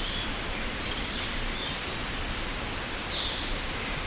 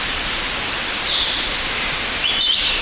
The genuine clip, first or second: first